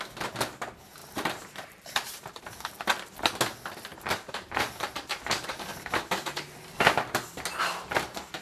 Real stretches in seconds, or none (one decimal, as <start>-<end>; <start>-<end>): 0.0-1.0; 2.4-3.9; 6.6-8.4